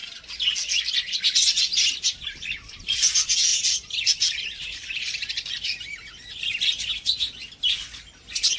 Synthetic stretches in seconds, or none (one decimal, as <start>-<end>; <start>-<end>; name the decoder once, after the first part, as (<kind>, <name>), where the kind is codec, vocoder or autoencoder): 3.5-5.5 (vocoder, BigVGAN v2)